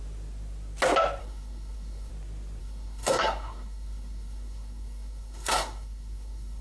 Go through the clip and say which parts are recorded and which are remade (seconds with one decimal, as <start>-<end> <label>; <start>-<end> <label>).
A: 0.0-1.2 recorded; 1.2-2.1 remade; 2.1-2.6 recorded; 2.6-6.6 remade